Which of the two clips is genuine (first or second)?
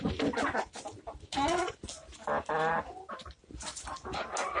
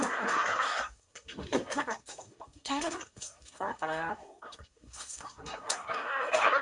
first